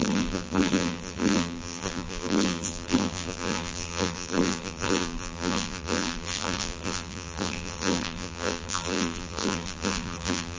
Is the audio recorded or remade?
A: remade